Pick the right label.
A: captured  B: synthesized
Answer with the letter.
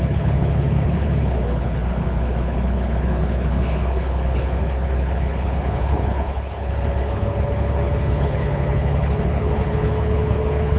B